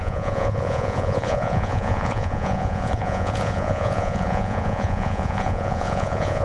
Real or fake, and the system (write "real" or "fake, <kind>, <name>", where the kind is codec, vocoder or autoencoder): fake, vocoder, Vocos